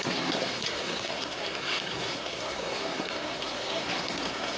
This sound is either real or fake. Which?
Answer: fake